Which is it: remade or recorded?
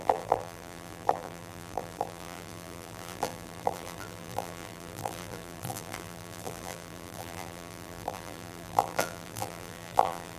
remade